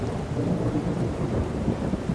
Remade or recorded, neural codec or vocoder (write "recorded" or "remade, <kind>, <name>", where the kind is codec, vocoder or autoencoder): remade, vocoder, BigVGAN v2